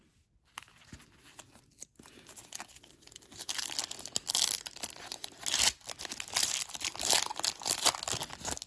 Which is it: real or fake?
real